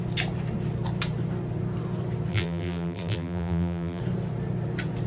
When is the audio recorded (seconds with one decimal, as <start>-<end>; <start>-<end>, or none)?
0.0-2.3; 4.0-5.1